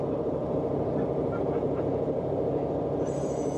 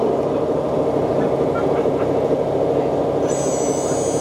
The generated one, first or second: first